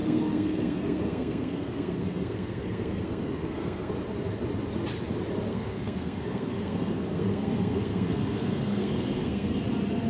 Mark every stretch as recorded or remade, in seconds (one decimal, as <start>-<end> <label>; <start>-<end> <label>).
0.0-3.9 remade; 3.9-5.5 recorded; 5.5-9.6 remade; 9.6-10.1 recorded